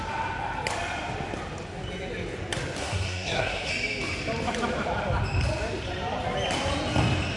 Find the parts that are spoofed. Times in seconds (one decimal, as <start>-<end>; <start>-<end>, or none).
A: 2.8-3.7